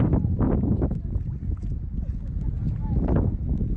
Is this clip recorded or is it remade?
recorded